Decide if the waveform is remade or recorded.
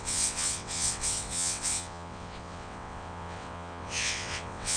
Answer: remade